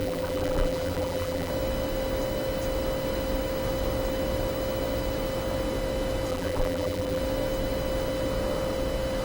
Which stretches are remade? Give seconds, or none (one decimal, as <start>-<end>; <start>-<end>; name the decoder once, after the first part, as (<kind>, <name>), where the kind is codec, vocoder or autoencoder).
0.0-1.5 (vocoder, BigVGAN v2); 6.3-7.2